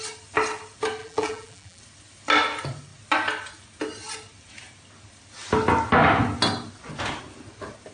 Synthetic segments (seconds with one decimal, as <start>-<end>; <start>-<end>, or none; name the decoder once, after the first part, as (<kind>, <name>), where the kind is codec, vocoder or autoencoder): 1.0-1.8 (vocoder, BigVGAN v2)